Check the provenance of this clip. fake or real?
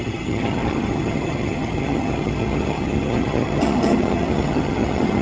fake